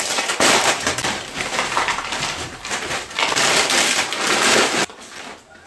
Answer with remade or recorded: remade